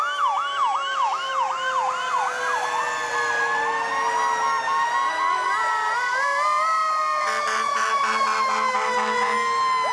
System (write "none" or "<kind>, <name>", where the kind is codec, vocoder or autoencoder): none